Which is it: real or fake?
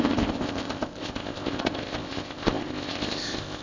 fake